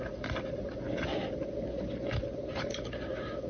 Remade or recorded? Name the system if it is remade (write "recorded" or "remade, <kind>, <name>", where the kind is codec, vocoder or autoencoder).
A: recorded